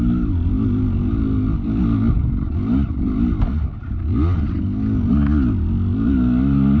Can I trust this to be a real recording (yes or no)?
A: yes